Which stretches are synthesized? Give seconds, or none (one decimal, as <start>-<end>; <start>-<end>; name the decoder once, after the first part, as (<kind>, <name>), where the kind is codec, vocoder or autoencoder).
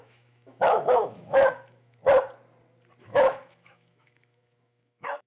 0.0-2.0 (autoencoder, DAC-VAE); 3.0-5.3